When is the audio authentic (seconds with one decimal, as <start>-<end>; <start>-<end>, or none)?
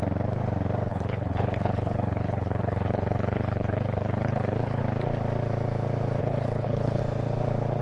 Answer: 0.0-0.9; 4.8-6.2; 7.0-7.8